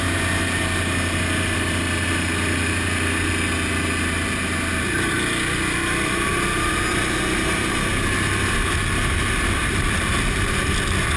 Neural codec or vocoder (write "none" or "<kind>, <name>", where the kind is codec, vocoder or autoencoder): none